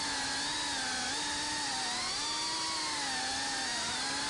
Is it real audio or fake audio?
real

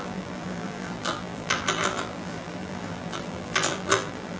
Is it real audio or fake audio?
fake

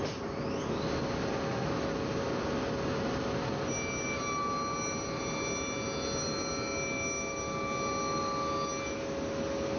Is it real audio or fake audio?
real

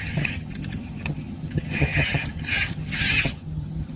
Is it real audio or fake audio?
fake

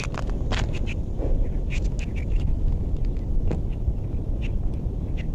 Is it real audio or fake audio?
real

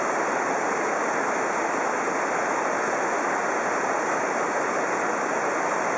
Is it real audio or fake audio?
real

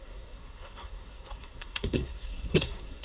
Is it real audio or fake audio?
fake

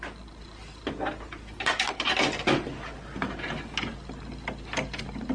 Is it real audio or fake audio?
real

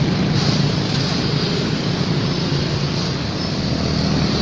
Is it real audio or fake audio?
real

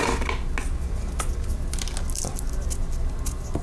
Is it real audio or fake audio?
real